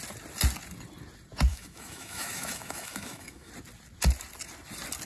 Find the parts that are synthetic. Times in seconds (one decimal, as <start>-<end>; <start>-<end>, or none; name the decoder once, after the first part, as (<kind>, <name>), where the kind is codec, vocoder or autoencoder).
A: 1.5-3.5 (autoencoder, DAC-VAE)